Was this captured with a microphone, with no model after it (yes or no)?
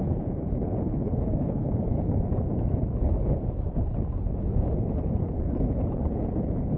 no